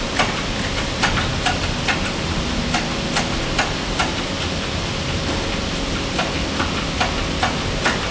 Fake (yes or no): no